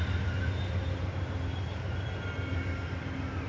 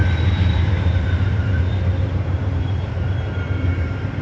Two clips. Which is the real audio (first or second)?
first